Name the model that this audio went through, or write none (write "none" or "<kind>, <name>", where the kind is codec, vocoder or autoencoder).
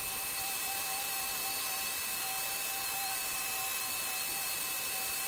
vocoder, BigVGAN v2